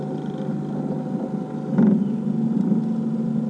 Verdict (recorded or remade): recorded